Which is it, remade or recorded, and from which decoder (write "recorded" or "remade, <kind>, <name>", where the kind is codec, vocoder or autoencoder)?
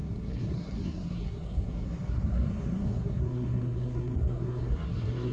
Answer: remade, codec, SNAC